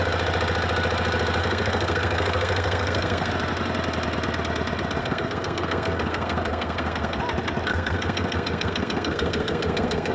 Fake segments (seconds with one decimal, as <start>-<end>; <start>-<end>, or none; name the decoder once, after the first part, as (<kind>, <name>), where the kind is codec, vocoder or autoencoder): 1.4-3.3 (codec, SNAC); 5.0-7.2; 7.7-10.1